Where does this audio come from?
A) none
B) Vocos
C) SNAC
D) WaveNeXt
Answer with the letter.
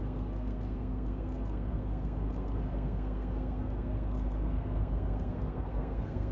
C